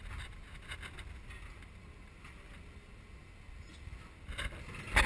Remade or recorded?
recorded